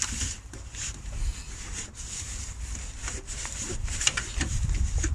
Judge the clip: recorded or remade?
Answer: remade